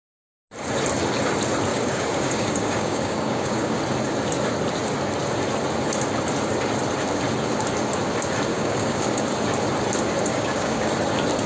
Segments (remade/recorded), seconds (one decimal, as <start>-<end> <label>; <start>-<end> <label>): 0.0-1.7 recorded; 1.7-3.8 remade; 3.8-8.5 recorded; 8.5-9.2 remade; 9.2-10.3 recorded; 10.3-10.9 remade; 10.9-11.5 recorded